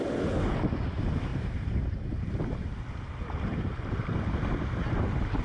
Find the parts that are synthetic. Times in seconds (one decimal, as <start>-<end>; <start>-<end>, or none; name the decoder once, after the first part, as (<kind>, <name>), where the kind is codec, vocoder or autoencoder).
1.3-2.3 (vocoder, BigVGAN v2); 3.5-4.0